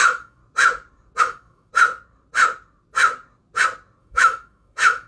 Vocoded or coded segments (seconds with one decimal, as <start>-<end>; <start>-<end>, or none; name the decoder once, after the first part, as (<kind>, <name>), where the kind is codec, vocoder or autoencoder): 0.0-0.4 (autoencoder, DAC-VAE); 1.2-1.7; 4.0-5.1